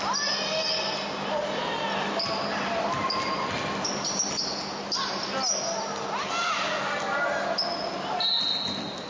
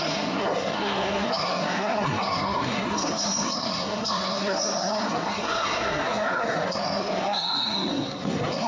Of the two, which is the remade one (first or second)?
second